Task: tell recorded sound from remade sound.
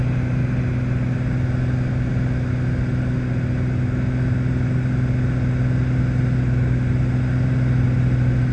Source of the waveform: recorded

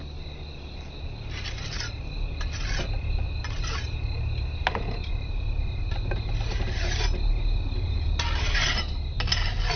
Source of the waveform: recorded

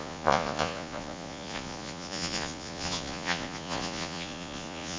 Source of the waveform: remade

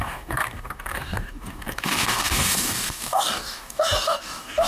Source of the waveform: remade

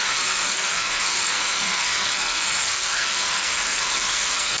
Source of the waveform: remade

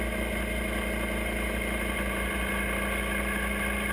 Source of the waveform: recorded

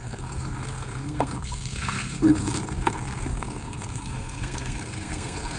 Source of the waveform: remade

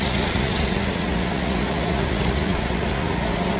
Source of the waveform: remade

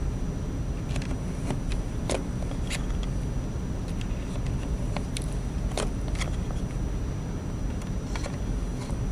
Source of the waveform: recorded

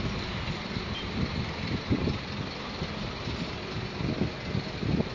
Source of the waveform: recorded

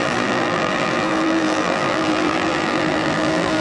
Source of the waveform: remade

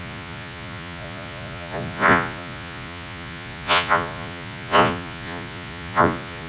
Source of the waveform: remade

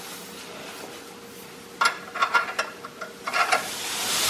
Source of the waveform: recorded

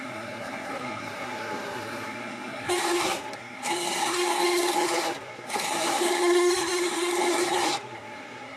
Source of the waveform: remade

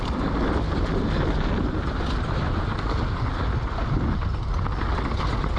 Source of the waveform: recorded